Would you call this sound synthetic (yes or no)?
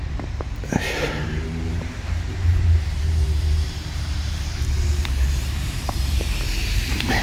yes